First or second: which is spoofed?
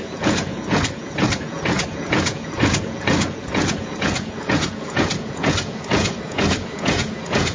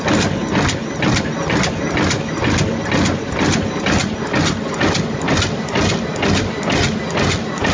first